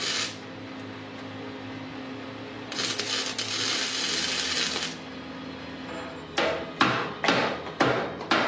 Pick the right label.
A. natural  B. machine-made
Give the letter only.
A